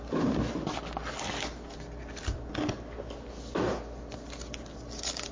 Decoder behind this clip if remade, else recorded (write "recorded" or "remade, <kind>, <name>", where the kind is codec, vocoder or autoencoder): recorded